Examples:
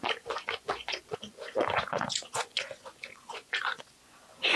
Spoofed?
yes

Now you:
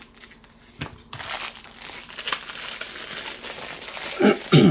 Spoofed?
no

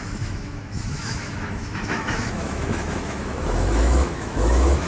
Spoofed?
yes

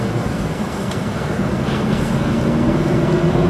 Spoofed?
yes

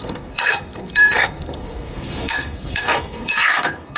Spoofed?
yes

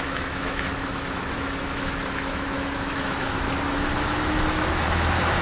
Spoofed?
yes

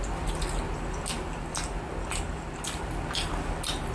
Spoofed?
no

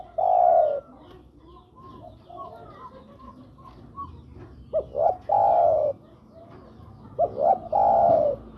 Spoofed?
no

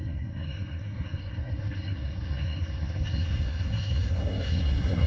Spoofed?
yes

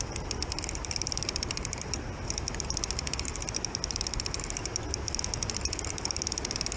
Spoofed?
no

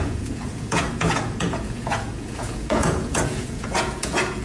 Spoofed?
yes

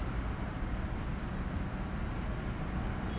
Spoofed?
no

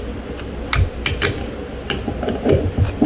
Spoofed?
no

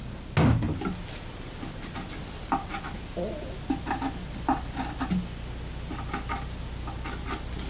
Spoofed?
no